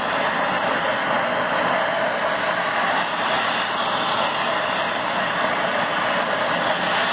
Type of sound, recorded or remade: recorded